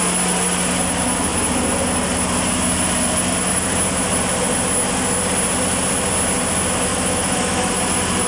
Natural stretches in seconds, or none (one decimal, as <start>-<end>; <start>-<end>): 0.0-6.9; 7.7-8.3